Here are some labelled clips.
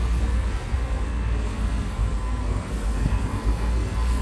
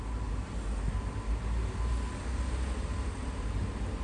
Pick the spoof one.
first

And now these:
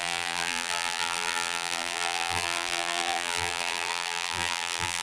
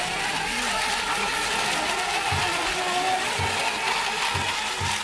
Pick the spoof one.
first